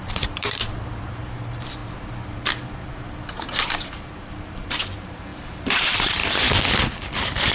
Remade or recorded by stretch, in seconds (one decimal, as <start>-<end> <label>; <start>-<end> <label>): 0.0-1.8 remade; 1.8-3.3 recorded; 3.3-6.2 remade; 6.2-7.5 recorded